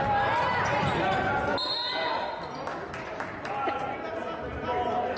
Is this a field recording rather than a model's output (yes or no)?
yes